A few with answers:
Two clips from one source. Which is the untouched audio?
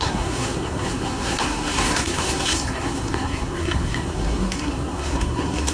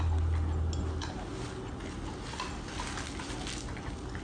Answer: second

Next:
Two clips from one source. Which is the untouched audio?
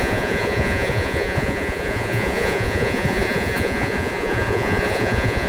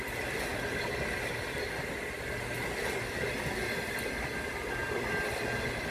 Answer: second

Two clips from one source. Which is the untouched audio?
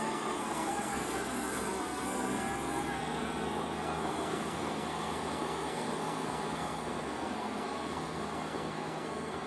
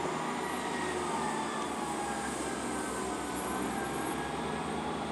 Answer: second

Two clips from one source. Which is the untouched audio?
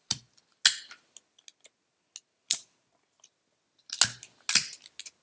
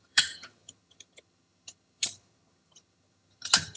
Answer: first